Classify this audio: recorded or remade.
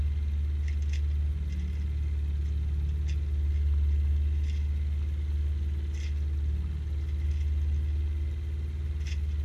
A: recorded